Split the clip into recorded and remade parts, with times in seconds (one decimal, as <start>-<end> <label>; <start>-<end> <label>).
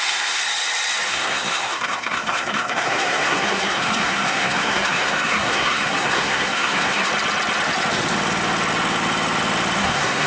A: 0.0-0.4 remade; 0.4-1.1 recorded; 1.1-7.1 remade; 7.1-9.8 recorded; 9.8-10.3 remade